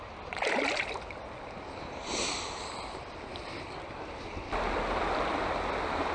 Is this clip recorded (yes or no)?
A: yes